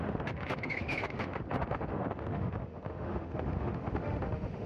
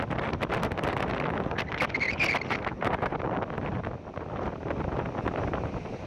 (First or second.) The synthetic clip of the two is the first